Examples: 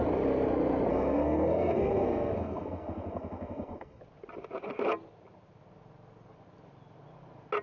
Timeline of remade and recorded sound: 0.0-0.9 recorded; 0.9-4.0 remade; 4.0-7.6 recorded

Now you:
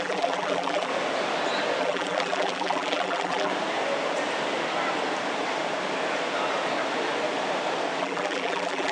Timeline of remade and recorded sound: 0.0-0.9 remade; 0.9-1.8 recorded; 1.8-3.5 remade; 3.5-8.0 recorded; 8.0-8.9 remade

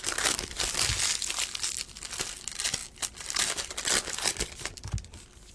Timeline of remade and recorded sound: 0.0-2.8 recorded; 2.8-3.5 remade; 3.5-5.5 recorded

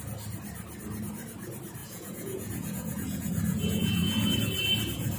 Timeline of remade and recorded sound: 0.0-1.8 recorded; 1.8-4.3 remade; 4.3-5.2 recorded

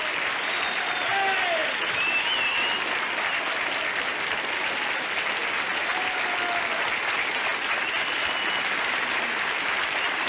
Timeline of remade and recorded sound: 0.0-10.3 recorded

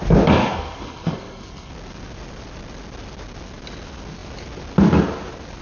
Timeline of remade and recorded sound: 0.0-0.4 recorded; 0.4-1.7 remade; 1.7-5.6 recorded

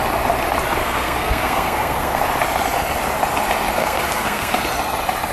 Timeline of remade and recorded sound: 0.0-0.8 recorded; 0.8-2.2 remade; 2.2-3.8 recorded; 3.8-4.6 remade; 4.6-5.3 recorded

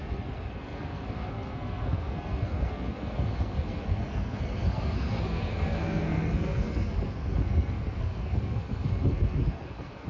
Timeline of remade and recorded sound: 0.0-10.1 remade